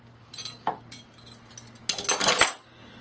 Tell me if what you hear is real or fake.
real